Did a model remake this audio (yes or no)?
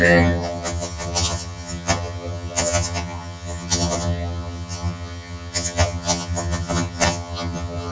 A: yes